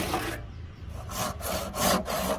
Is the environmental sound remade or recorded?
recorded